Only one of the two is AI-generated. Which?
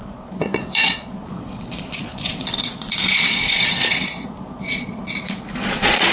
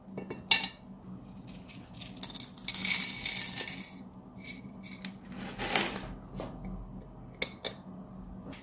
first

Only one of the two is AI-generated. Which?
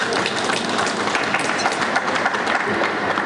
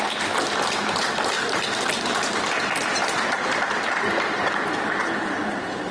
second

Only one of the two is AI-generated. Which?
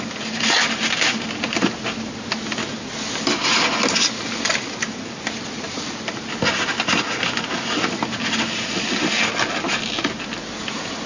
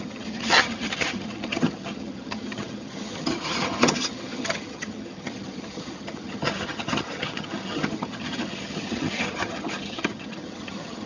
second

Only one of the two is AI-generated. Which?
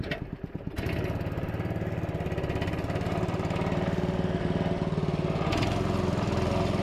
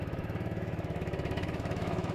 second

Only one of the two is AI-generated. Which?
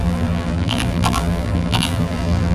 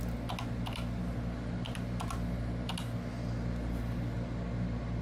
first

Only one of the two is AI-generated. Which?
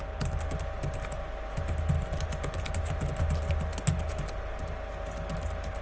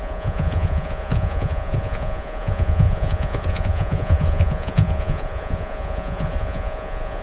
second